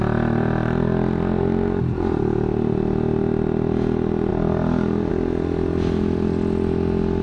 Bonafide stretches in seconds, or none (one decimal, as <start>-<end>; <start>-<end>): 0.0-7.2